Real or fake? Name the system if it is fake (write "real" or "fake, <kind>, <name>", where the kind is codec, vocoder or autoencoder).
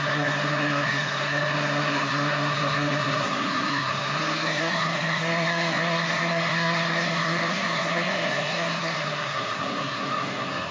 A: fake, codec, SNAC